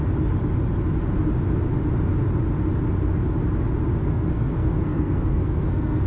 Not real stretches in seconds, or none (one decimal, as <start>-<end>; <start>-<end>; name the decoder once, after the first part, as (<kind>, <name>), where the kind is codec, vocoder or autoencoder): 4.0-6.1 (codec, SNAC)